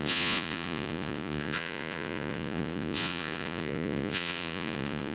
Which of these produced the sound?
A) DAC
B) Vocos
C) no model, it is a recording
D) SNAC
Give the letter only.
B